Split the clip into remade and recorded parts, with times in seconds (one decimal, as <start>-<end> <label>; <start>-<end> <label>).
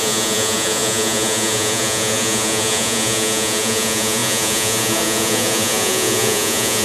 0.0-6.8 remade